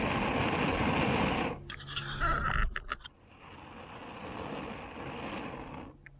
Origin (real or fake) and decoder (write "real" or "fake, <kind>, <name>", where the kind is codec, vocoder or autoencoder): real